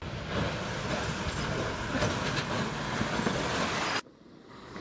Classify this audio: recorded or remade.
recorded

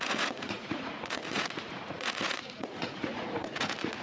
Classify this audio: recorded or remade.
remade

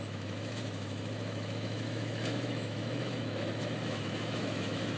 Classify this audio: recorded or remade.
remade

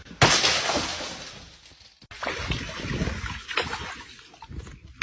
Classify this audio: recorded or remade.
recorded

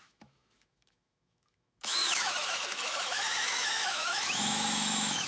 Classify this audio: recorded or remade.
remade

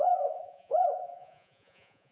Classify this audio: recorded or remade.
remade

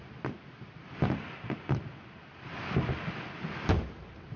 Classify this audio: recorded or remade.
recorded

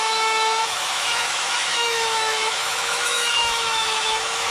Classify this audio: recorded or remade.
remade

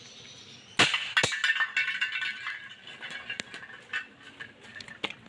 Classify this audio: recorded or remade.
recorded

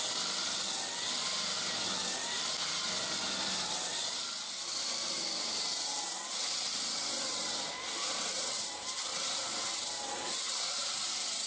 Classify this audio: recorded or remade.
remade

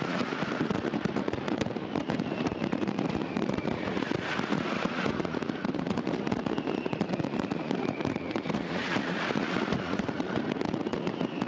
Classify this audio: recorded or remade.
remade